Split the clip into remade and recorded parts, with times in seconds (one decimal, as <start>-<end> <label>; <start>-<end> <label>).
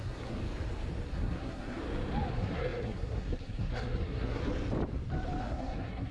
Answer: 0.0-0.4 remade; 0.4-1.1 recorded; 1.1-1.8 remade; 1.8-2.3 recorded; 2.3-4.4 remade; 4.4-5.4 recorded; 5.4-6.1 remade